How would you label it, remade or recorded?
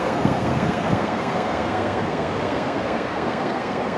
remade